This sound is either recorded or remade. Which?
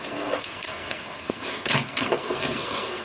remade